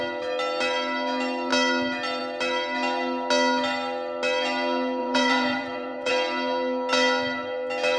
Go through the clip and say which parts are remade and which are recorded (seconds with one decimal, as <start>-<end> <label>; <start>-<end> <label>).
0.0-5.0 recorded; 5.0-6.1 remade; 6.1-8.0 recorded